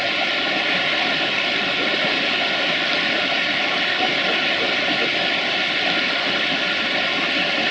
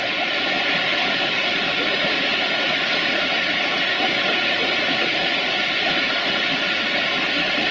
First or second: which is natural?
first